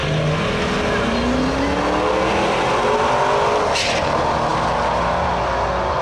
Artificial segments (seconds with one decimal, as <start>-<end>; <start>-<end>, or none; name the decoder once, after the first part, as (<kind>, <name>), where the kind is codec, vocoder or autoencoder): none